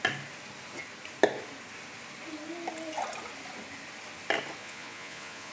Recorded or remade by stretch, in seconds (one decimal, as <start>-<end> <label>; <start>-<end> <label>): 0.0-4.6 recorded; 4.6-5.5 remade